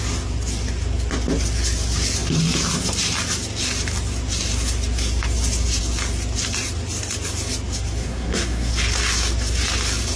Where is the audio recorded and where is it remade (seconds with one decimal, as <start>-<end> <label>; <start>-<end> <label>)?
0.0-8.0 recorded; 8.0-8.7 remade; 8.7-10.2 recorded